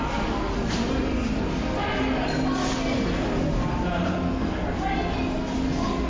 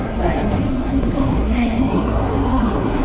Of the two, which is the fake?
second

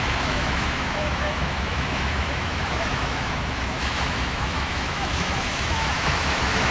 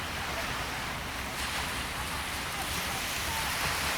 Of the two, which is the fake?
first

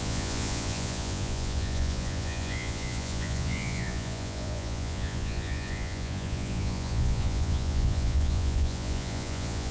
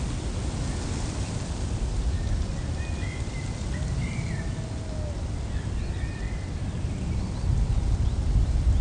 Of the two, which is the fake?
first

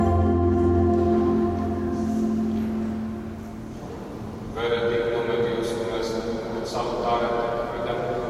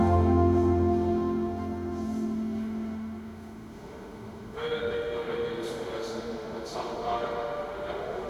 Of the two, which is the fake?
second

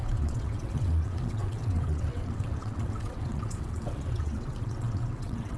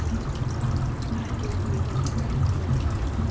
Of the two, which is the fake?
first